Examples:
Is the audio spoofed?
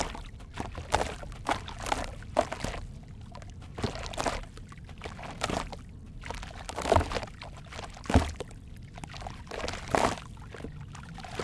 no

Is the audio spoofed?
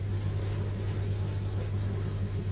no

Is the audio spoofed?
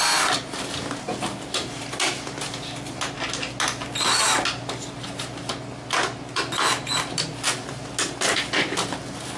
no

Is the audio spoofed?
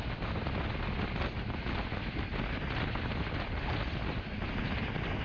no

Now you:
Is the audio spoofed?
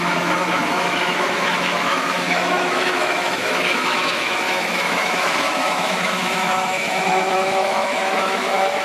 yes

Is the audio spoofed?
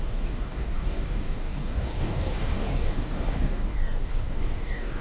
yes